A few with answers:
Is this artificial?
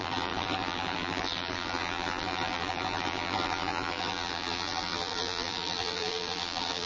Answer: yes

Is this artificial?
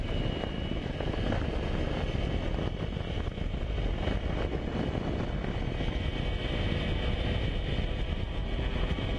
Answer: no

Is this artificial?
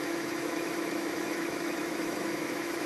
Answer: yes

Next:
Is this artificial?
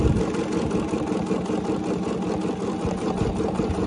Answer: no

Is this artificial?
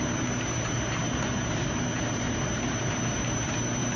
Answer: yes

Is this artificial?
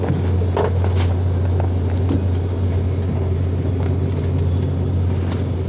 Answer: no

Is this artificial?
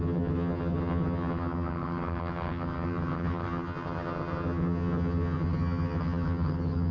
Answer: yes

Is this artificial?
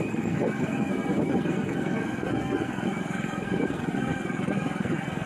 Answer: yes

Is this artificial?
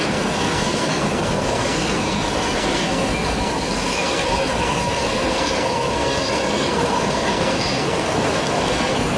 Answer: yes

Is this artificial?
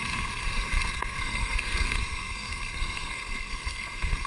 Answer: yes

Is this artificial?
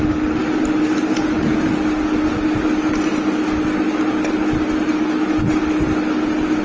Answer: no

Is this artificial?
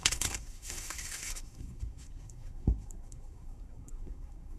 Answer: yes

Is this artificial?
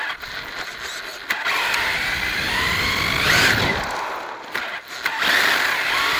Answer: no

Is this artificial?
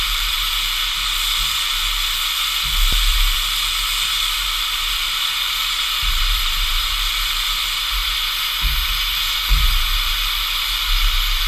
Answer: yes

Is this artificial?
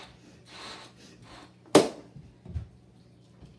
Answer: no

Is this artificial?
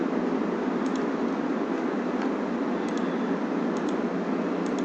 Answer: no